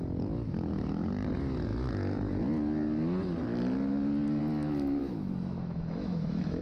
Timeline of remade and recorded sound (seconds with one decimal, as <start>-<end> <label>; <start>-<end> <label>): 0.0-5.0 recorded; 5.0-6.6 remade